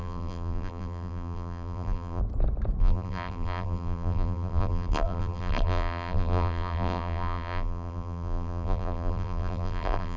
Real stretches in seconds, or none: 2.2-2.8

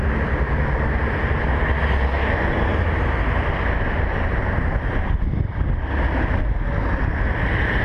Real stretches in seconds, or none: 0.0-7.8

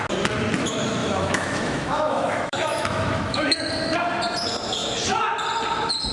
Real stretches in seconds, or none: 0.0-1.0; 3.7-6.1

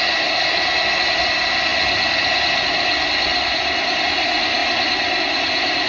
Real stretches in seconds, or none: 0.0-5.9